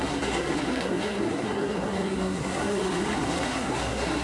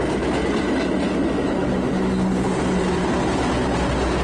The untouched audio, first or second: second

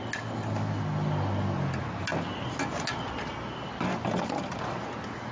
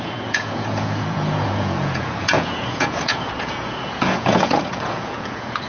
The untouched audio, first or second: first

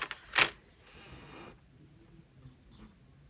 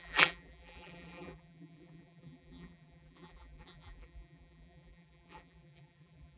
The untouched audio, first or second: first